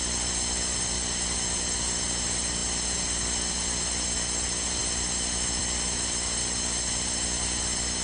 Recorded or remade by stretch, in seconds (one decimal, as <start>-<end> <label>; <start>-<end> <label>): 0.0-8.0 recorded